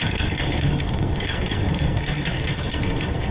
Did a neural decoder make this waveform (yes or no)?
yes